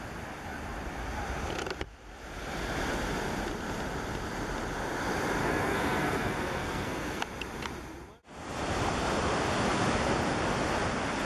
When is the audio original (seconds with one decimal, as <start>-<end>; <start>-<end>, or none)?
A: 0.0-5.4; 7.2-11.3